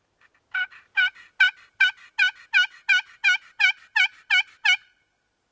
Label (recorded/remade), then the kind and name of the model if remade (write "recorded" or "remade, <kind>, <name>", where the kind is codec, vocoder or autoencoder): recorded